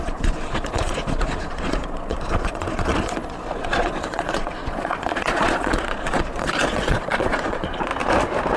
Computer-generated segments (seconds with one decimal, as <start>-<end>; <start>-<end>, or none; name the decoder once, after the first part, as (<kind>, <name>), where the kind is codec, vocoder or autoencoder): 0.0-7.9 (vocoder, Vocos)